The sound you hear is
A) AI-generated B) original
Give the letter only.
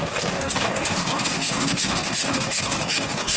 A